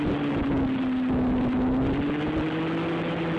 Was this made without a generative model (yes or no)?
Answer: yes